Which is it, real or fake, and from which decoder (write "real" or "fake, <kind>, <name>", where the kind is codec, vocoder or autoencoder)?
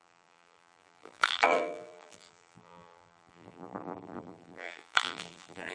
fake, vocoder, BigVGAN v2